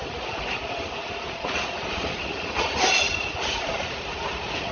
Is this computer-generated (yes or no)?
yes